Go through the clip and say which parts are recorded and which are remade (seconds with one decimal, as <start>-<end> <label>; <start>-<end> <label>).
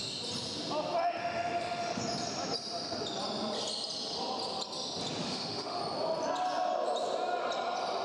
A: 0.0-1.2 recorded; 1.2-2.0 remade; 2.0-5.2 recorded; 5.2-5.8 remade; 5.8-8.0 recorded